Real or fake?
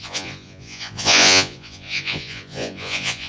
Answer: fake